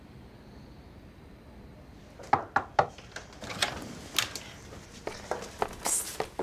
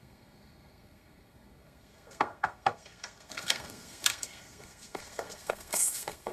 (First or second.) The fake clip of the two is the second